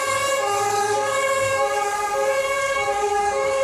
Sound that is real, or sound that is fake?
fake